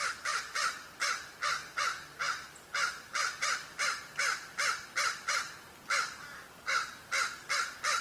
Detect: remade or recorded recorded